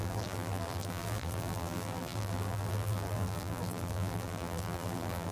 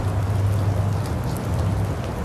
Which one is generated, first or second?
first